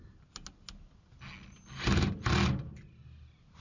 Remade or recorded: recorded